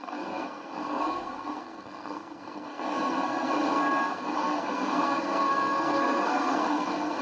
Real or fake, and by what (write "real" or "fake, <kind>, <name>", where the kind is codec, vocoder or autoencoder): fake, codec, SNAC